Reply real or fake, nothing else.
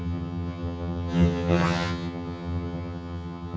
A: fake